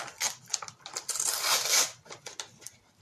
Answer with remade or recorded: recorded